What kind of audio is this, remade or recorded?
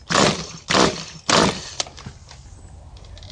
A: recorded